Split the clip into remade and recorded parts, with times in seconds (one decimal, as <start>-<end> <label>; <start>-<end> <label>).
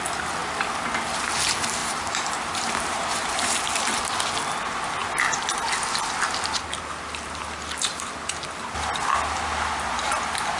0.0-1.8 recorded; 1.8-4.0 remade; 4.0-10.6 recorded